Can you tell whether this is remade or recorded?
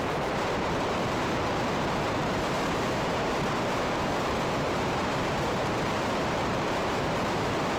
remade